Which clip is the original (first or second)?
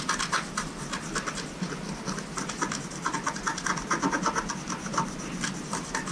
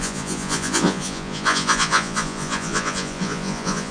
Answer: first